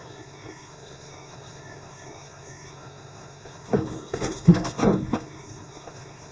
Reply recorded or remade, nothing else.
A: remade